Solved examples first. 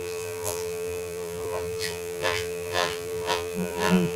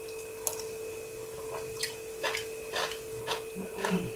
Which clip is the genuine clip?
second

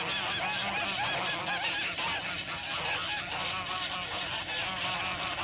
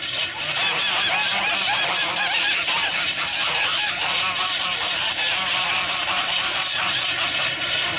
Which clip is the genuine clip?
first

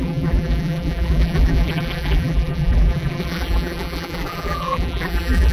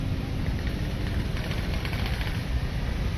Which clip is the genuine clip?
second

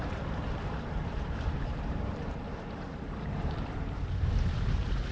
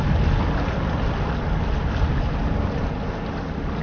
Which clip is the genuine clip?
second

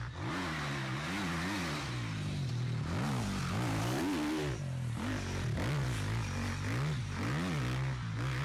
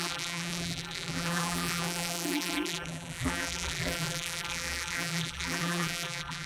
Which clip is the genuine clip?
first